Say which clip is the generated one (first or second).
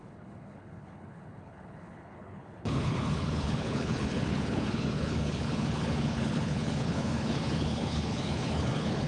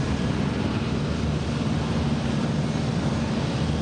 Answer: first